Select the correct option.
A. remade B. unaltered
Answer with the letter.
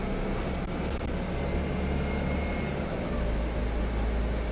B